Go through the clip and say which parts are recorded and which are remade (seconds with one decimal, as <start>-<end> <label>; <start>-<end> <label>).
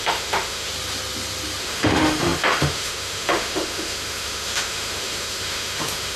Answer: 0.0-0.7 remade; 0.7-1.6 recorded; 1.6-6.2 remade